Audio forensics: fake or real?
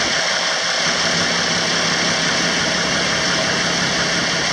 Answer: real